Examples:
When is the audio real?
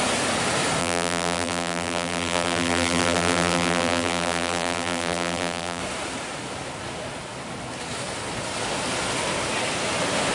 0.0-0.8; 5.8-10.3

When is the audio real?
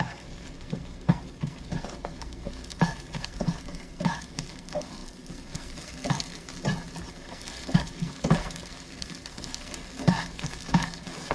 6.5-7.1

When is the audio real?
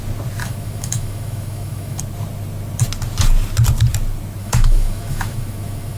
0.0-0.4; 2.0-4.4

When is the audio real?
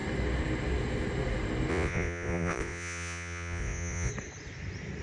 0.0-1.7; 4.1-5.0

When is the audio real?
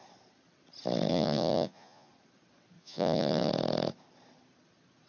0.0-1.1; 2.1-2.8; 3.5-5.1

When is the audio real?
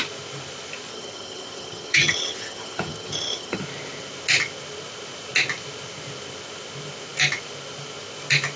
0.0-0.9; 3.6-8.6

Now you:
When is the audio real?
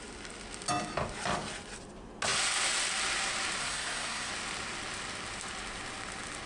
0.0-3.6; 4.3-6.5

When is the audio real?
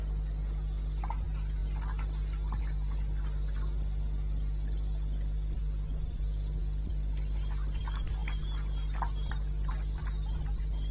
none